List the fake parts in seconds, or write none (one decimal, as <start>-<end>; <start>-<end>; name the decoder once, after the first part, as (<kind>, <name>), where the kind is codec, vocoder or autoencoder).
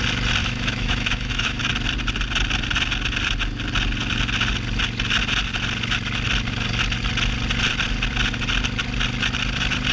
0.4-1.7 (autoencoder, DAC-VAE)